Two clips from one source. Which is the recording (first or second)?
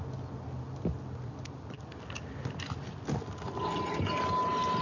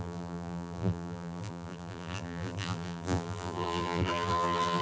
first